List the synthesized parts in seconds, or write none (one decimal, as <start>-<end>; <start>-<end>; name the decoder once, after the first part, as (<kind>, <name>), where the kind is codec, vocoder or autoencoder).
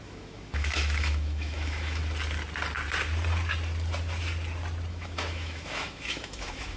0.0-2.0 (autoencoder, DAC-VAE); 4.9-6.8